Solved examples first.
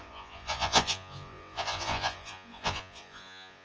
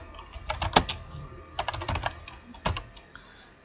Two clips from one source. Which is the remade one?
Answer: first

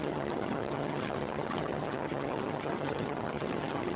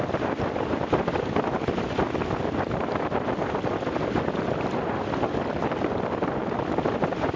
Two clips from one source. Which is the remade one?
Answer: first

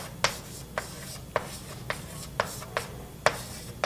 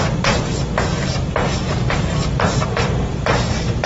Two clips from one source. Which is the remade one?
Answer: second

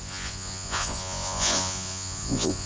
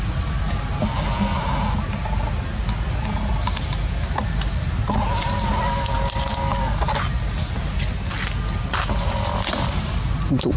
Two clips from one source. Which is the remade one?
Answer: first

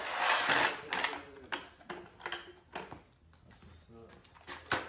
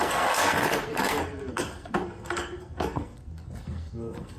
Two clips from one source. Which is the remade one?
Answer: second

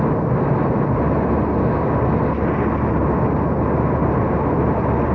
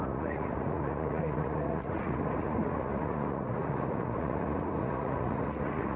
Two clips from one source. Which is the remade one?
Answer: second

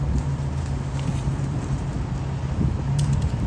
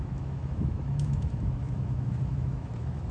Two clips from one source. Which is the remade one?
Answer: second